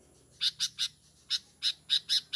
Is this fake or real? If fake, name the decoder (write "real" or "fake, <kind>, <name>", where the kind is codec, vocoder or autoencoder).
real